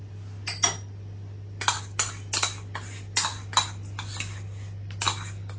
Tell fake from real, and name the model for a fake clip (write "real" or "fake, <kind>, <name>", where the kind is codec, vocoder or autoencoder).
real